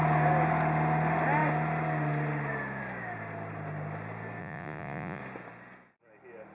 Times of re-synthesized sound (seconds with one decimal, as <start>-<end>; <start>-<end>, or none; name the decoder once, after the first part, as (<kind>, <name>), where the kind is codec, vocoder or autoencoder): 4.4-5.2 (vocoder, Vocos)